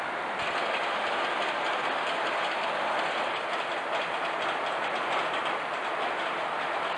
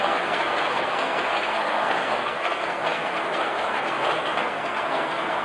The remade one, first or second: second